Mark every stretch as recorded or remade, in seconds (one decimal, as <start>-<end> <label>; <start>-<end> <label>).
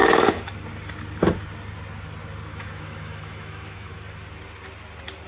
0.0-0.5 remade; 0.5-2.5 recorded; 2.5-3.9 remade; 3.9-5.3 recorded